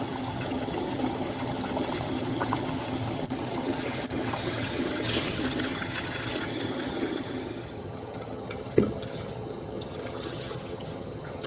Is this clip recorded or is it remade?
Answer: remade